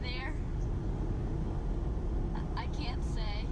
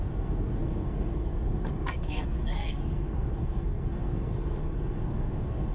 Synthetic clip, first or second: second